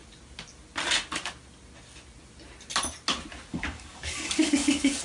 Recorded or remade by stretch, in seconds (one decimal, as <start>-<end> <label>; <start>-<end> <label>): 0.0-3.5 recorded; 3.5-5.0 remade